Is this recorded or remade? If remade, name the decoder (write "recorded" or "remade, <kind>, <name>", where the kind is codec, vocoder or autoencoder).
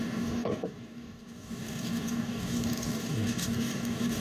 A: remade, codec, DAC